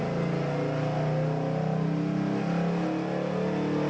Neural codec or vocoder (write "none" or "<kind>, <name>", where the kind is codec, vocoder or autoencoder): none